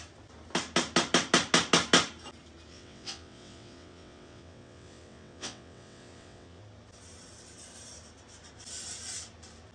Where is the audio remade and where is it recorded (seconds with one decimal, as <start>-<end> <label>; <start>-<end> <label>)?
0.0-2.7 recorded; 2.7-6.6 remade; 6.6-9.7 recorded